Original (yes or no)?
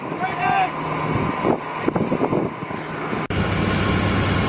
yes